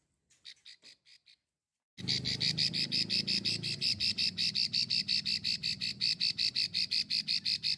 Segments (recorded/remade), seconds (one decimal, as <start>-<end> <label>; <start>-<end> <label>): 0.0-7.8 recorded